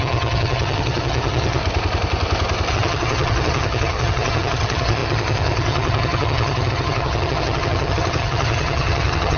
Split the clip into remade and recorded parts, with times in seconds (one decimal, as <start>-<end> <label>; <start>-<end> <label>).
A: 0.0-1.6 remade; 1.6-2.7 recorded; 2.7-9.4 remade

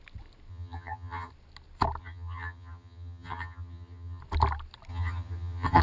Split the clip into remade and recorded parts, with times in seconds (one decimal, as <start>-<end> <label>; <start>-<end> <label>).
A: 0.0-0.5 recorded; 0.5-1.3 remade; 1.3-2.0 recorded; 2.0-4.2 remade; 4.2-4.9 recorded; 4.9-5.8 remade